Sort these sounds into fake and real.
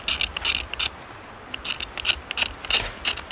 real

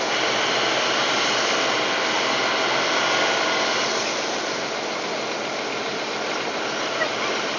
real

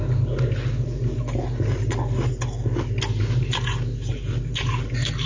real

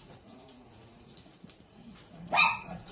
fake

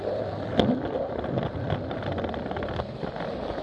real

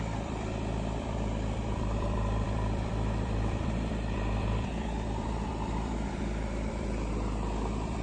fake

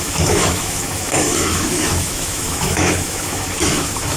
fake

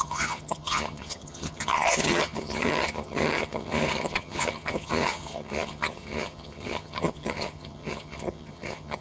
fake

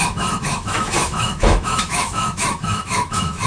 fake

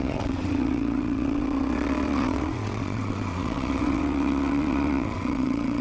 fake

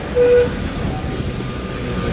real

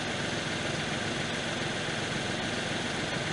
real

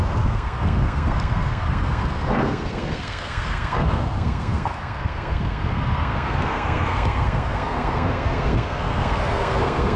fake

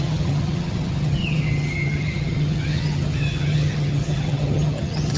fake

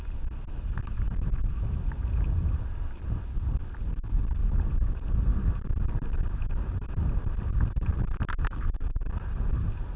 real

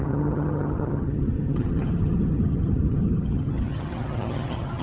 fake